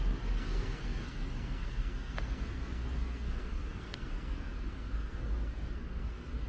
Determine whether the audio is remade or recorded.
remade